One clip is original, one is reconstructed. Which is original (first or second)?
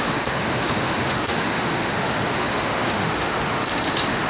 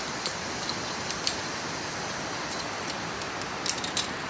second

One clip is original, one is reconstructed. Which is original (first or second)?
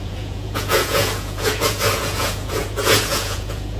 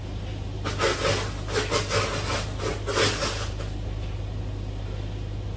second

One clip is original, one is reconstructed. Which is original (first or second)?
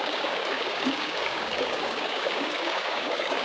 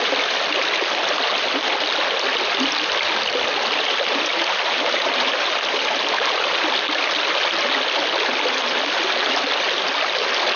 second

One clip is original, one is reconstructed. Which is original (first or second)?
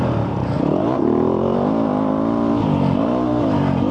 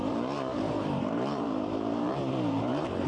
first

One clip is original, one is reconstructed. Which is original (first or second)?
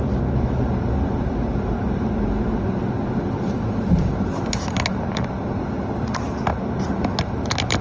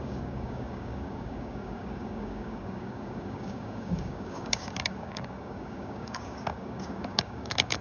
first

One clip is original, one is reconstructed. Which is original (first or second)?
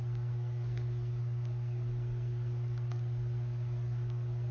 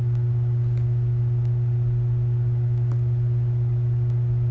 second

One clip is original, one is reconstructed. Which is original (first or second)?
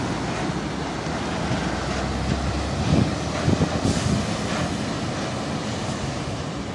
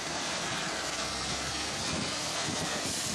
first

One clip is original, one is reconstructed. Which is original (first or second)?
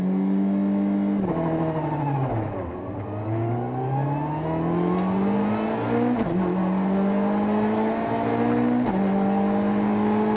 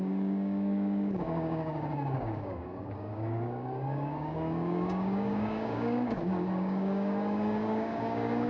first